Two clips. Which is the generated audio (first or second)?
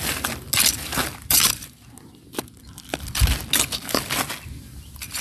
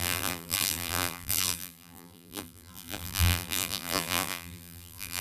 second